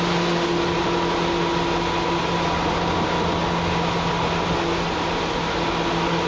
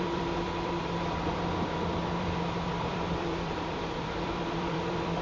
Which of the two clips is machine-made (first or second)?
second